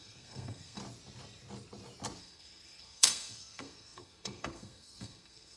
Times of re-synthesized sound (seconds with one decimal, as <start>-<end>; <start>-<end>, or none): 0.0-0.8; 2.2-5.6